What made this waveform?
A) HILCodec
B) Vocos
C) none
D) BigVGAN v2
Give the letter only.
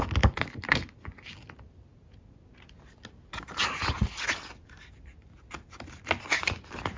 C